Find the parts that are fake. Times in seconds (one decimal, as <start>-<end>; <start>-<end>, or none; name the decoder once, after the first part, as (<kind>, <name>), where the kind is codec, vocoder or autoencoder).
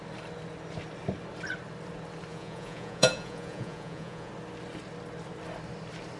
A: 2.3-4.3 (vocoder, Vocos)